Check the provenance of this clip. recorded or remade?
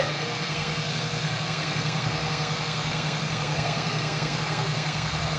remade